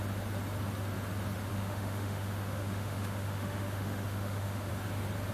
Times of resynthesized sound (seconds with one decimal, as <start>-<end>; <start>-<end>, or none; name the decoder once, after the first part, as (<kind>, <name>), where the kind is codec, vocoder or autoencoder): 1.5-4.7 (autoencoder, DAC-VAE)